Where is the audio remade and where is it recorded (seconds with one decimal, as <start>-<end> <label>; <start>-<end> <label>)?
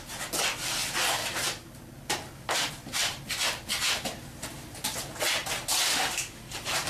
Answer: 0.0-5.9 recorded; 5.9-6.4 remade; 6.4-6.9 recorded